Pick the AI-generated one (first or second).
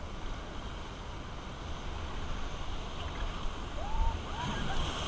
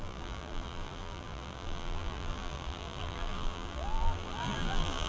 second